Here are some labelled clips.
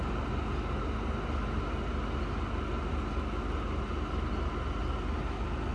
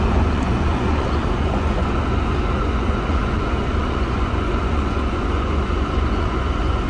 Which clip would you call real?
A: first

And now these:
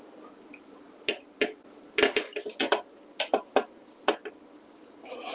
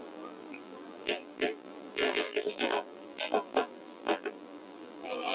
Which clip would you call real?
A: first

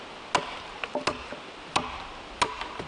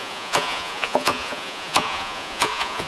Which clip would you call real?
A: first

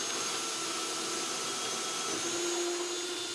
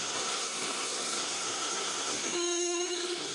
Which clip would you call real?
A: first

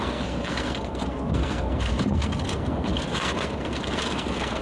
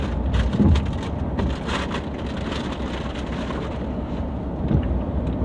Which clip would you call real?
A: second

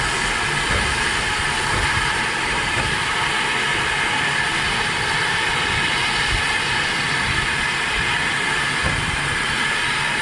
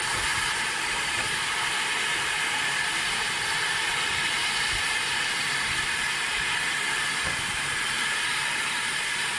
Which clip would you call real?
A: first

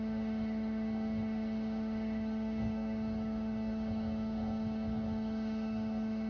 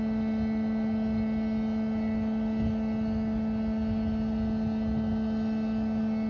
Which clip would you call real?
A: second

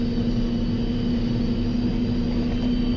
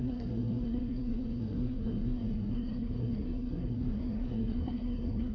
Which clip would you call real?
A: first